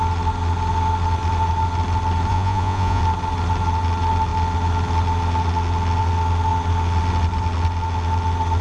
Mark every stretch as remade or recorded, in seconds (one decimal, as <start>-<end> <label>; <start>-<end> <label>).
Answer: 0.0-2.3 recorded; 2.3-3.0 remade; 3.0-8.6 recorded